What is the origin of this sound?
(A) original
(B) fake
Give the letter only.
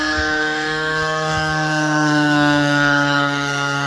B